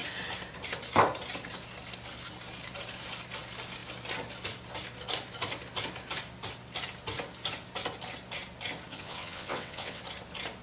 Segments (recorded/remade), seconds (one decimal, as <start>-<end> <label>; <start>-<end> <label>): 0.0-8.9 recorded; 8.9-10.0 remade; 10.0-10.6 recorded